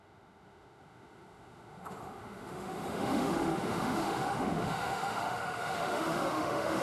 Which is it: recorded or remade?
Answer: remade